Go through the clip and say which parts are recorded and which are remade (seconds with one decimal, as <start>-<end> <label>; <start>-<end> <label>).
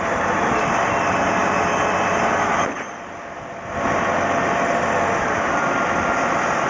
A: 0.0-6.7 recorded